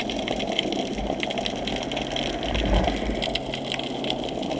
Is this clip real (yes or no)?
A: yes